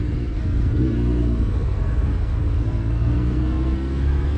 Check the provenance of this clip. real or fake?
fake